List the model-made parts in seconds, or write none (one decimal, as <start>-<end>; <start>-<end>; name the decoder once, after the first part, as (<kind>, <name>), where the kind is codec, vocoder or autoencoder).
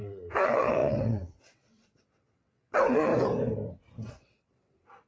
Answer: 0.0-3.1 (vocoder, WaveNeXt); 4.1-5.1